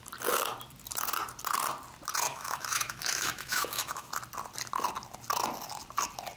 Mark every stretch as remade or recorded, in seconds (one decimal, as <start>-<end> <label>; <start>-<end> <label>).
0.0-2.3 recorded; 2.3-4.1 remade; 4.1-6.4 recorded